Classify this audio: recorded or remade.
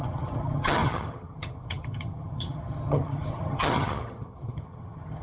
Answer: remade